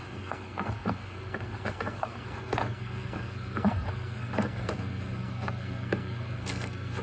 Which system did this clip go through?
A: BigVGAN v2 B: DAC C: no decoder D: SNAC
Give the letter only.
D